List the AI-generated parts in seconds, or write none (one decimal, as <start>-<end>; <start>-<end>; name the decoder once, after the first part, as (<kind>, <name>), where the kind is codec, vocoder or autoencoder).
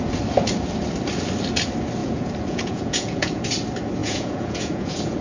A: 2.0-3.4 (vocoder, Vocos); 4.0-5.2